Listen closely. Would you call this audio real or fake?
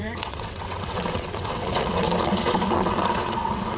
fake